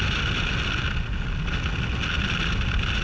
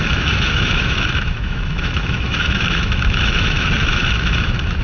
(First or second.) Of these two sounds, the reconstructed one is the second